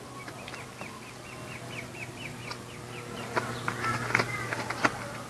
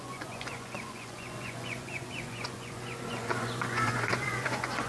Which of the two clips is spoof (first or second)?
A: second